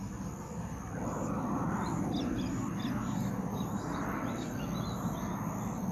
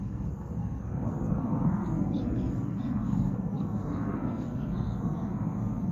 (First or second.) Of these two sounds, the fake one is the second